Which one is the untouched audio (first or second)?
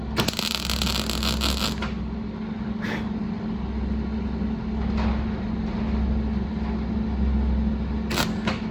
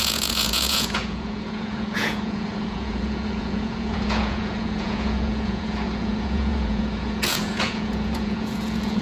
first